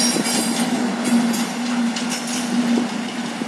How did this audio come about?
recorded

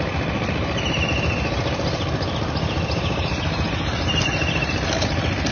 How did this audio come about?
recorded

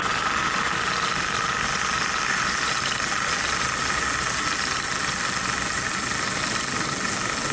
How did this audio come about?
recorded